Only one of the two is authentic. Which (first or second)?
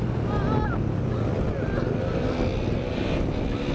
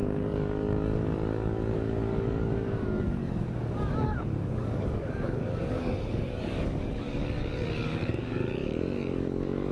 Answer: first